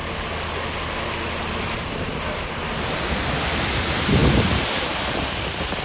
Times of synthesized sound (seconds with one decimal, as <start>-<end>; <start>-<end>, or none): none

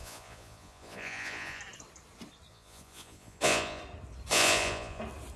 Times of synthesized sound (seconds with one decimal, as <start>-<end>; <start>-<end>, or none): 0.0-1.6; 2.5-3.8; 4.3-5.0